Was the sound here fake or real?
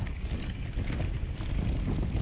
real